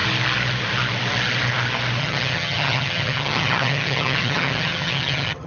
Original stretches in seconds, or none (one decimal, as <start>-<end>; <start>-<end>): 0.0-2.0